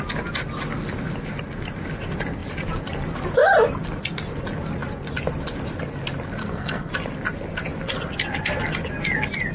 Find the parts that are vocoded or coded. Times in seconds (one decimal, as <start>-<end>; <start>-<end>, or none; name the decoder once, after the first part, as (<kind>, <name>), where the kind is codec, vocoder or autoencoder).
6.4-6.9 (codec, SNAC)